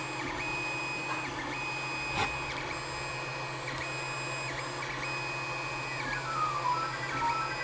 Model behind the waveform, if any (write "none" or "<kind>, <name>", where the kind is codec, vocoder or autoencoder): none